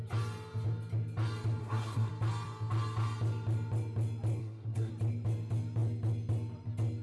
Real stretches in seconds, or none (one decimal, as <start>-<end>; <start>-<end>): 0.0-1.6; 2.1-4.4; 4.9-7.0